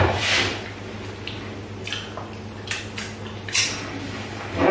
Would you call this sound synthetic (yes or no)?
no